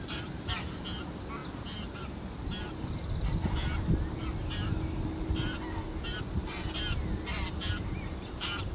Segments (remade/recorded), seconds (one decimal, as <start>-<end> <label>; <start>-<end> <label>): 0.0-8.7 recorded